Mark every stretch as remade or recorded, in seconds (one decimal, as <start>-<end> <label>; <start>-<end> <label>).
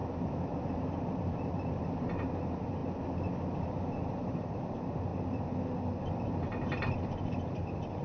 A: 0.0-2.8 remade; 2.8-3.7 recorded; 3.7-5.1 remade; 5.1-6.0 recorded; 6.0-8.0 remade